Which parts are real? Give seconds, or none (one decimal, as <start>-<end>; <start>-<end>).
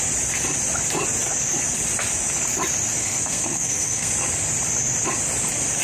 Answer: 0.0-3.0; 4.1-5.8